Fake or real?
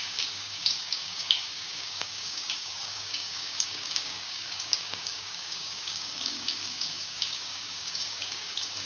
fake